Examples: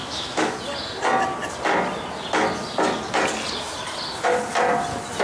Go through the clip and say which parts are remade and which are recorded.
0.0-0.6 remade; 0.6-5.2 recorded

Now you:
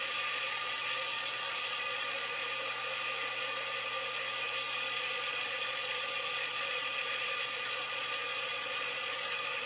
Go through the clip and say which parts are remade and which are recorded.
0.0-2.4 remade; 2.4-5.0 recorded; 5.0-9.7 remade

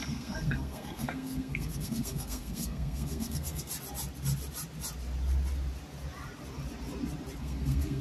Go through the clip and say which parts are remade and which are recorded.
0.0-3.7 remade; 3.7-7.4 recorded; 7.4-8.0 remade

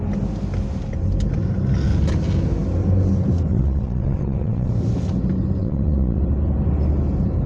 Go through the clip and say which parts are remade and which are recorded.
0.0-3.5 recorded; 3.5-4.7 remade; 4.7-5.6 recorded; 5.6-6.2 remade; 6.2-7.5 recorded